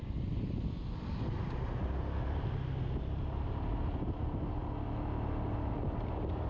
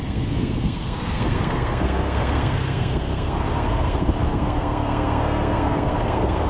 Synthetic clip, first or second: second